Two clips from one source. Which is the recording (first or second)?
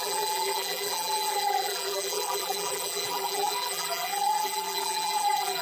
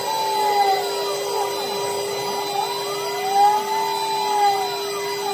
second